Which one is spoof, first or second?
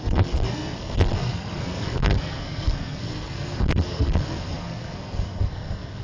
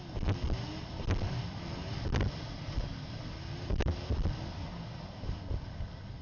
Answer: first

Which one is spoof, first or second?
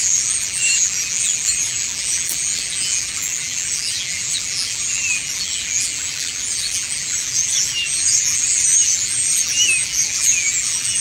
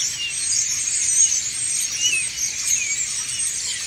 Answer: first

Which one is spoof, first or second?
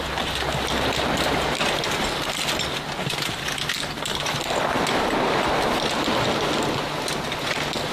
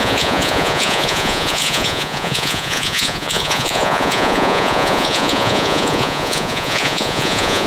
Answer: second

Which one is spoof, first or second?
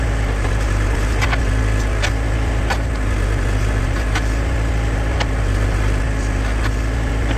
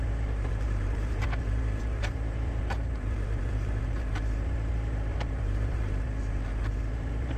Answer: second